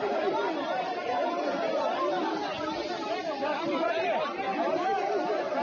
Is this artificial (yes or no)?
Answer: no